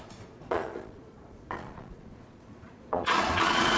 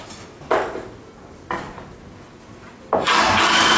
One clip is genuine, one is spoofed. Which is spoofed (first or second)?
first